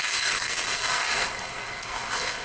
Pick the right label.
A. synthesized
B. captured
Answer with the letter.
A